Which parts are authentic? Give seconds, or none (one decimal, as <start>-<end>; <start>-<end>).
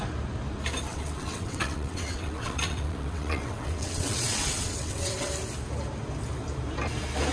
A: 0.0-0.9; 5.3-7.3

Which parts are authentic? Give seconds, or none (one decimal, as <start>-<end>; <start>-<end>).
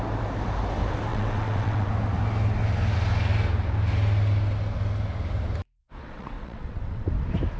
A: 0.0-1.1; 1.9-5.8; 7.1-7.6